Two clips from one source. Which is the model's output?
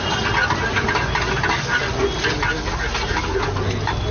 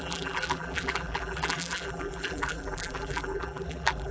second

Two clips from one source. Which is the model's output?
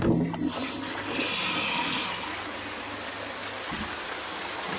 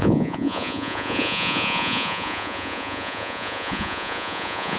second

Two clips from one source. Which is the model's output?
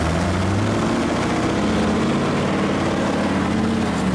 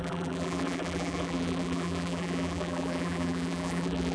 second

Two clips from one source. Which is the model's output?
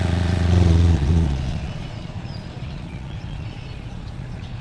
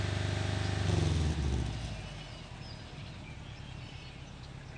first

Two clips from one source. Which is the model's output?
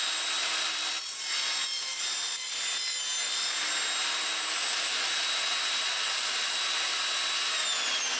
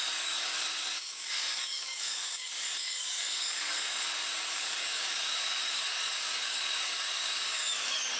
second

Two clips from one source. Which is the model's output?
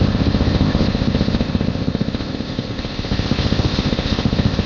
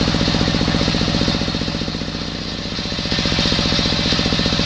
first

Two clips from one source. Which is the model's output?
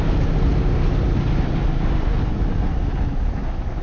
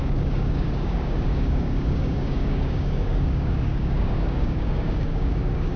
second